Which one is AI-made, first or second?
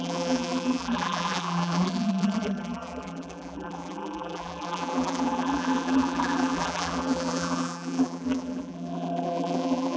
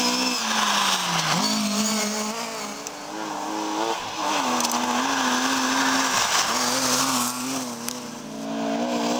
first